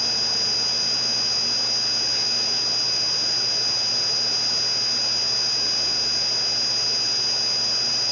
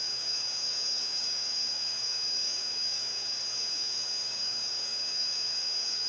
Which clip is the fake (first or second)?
second